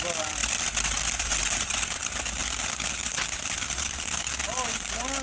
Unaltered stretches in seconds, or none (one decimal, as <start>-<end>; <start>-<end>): 0.0-0.4; 1.7-2.4; 4.4-5.2